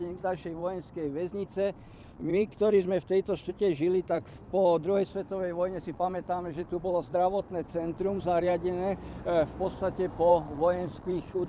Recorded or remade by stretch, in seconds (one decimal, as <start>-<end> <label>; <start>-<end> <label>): 0.0-0.6 remade; 0.6-1.3 recorded; 1.3-4.4 remade; 4.4-5.8 recorded; 5.8-8.5 remade; 8.5-10.3 recorded; 10.3-11.5 remade